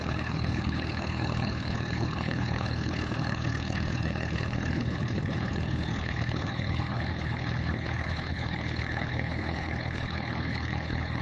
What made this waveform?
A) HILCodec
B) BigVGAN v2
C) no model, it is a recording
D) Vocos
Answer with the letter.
A